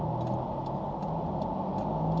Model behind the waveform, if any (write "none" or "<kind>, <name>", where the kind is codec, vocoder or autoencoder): none